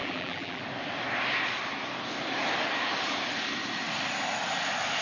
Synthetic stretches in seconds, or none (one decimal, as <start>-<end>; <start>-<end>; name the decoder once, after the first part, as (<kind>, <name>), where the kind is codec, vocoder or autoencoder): 0.0-0.6 (vocoder, BigVGAN v2)